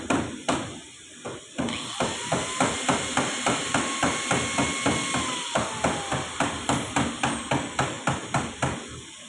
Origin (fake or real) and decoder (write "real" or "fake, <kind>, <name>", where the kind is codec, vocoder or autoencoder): real